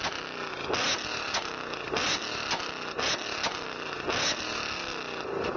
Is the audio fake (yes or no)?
no